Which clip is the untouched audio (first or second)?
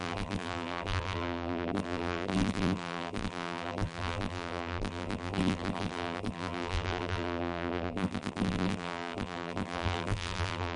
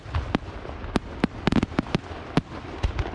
second